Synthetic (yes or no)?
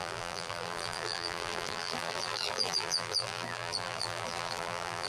yes